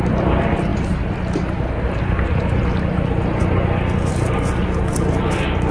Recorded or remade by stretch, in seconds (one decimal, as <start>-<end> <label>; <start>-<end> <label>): 0.0-5.7 recorded